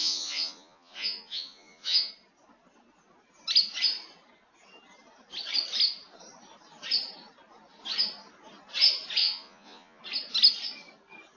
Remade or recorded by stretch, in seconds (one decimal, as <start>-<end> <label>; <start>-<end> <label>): 0.0-2.1 remade; 2.1-9.2 recorded; 9.2-10.0 remade; 10.0-11.4 recorded